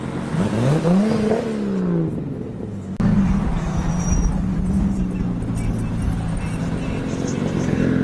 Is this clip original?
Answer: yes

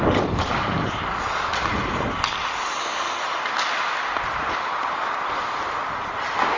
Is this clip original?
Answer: yes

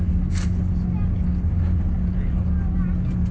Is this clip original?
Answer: yes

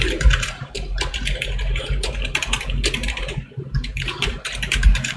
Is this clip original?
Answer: no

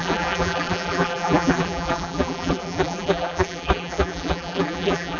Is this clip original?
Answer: no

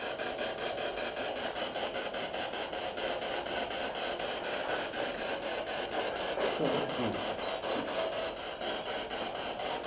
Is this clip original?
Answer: yes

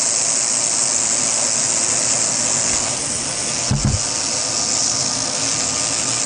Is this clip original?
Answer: yes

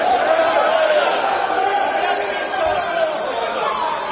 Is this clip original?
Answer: no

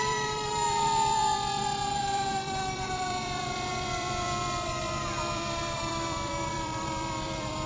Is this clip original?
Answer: no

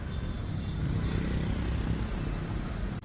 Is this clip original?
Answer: no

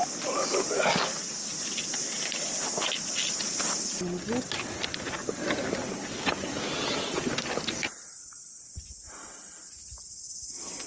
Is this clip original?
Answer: yes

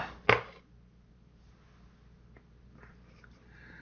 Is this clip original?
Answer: yes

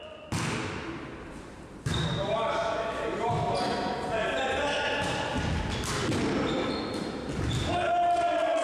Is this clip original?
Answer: yes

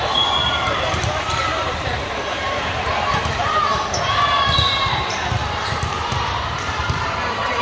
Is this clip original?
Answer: no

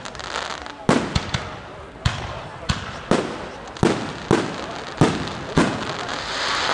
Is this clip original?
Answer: yes